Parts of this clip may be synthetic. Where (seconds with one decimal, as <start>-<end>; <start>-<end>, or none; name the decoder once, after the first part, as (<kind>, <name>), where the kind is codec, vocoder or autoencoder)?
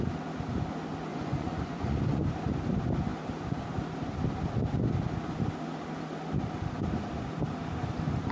1.1-2.2 (vocoder, Vocos)